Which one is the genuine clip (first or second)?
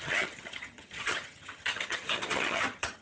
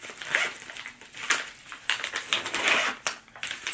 second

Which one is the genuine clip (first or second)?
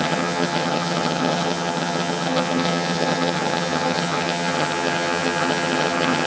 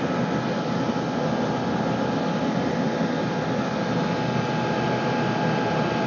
second